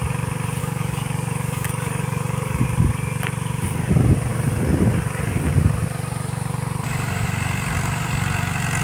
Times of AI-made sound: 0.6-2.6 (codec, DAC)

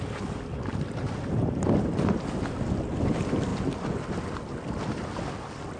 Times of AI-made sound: none

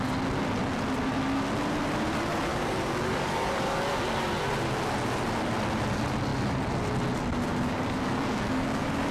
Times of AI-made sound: 2.5-3.9 (codec, DAC); 7.5-9.1

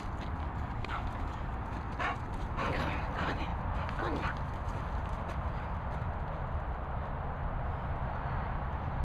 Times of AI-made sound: 0.4-1.6 (codec, DAC)

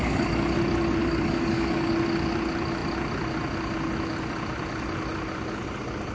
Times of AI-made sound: 0.0-0.6 (codec, DAC); 1.0-1.9

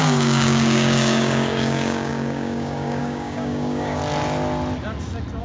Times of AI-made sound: 0.0-4.0 (codec, DAC)